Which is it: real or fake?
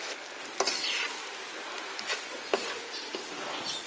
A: real